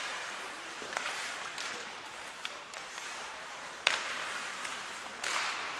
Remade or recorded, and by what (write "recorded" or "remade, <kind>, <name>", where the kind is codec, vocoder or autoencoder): remade, vocoder, BigVGAN v2